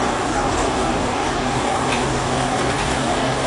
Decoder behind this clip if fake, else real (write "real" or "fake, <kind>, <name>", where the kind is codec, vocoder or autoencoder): fake, codec, DAC